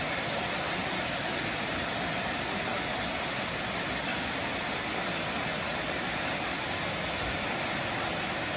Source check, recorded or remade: recorded